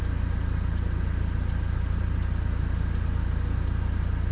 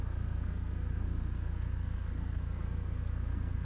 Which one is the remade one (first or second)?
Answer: second